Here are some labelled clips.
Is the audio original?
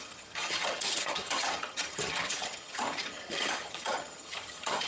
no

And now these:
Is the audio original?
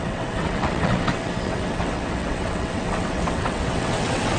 no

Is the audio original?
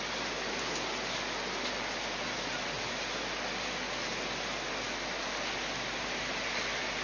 yes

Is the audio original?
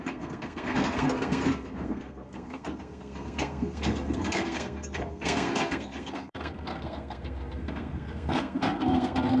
no